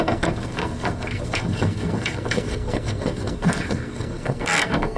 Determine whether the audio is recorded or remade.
remade